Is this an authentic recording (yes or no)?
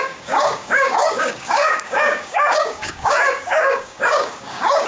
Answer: no